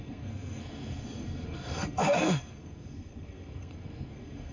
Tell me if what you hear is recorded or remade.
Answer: remade